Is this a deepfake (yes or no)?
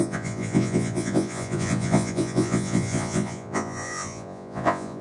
yes